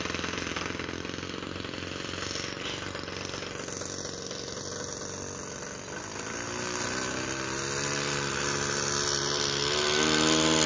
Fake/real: real